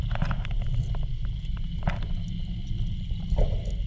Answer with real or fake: real